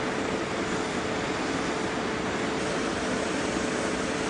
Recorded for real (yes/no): yes